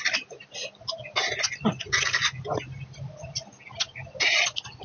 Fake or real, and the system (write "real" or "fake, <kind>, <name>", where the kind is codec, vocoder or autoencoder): real